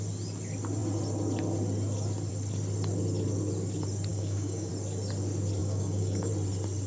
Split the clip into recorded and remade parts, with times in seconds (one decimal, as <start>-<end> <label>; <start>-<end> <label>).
0.0-4.1 recorded; 4.1-4.7 remade; 4.7-5.6 recorded; 5.6-6.3 remade; 6.3-6.9 recorded